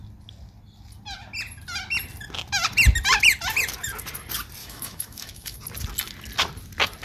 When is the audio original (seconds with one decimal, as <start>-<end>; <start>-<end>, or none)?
0.0-4.6; 5.6-7.0